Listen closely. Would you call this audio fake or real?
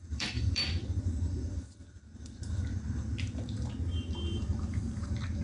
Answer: fake